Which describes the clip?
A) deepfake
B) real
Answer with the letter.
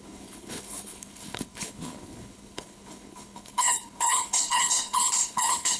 A